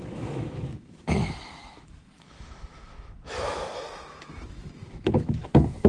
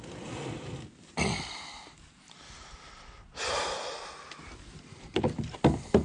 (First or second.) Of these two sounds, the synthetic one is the first